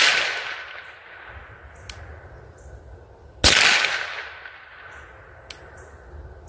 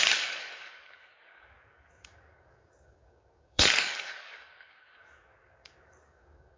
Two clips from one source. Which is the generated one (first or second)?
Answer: second